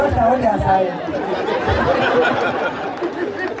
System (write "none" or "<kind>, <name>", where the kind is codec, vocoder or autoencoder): none